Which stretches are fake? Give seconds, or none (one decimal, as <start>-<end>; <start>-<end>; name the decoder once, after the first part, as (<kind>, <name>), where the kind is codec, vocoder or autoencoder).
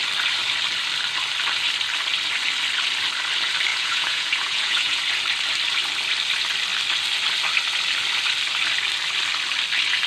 3.7-5.0 (vocoder, Vocos)